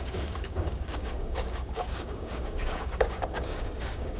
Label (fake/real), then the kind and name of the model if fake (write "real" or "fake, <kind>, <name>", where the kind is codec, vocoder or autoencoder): fake, codec, DAC